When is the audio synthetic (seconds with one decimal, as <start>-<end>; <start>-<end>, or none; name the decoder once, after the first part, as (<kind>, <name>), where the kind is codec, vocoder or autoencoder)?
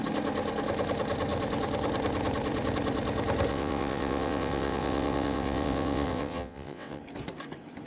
3.5-7.0 (vocoder, WaveNeXt)